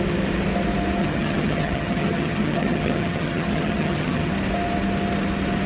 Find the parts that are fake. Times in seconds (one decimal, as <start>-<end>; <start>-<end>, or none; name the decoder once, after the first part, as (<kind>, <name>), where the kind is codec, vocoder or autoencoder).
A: 1.0-4.3 (vocoder, HiFi-GAN)